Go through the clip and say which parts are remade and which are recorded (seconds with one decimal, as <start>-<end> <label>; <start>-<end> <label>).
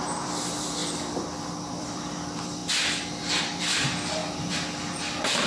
0.0-0.8 remade; 0.8-1.7 recorded; 1.7-2.6 remade; 2.6-3.2 recorded; 3.2-4.2 remade; 4.2-5.0 recorded; 5.0-5.5 remade